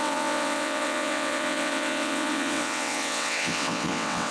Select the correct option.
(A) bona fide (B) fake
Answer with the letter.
B